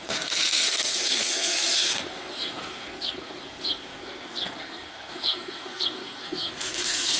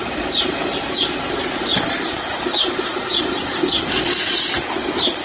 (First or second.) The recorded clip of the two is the second